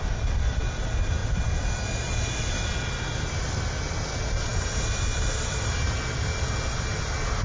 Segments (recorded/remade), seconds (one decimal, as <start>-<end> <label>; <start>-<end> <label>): 0.0-7.4 recorded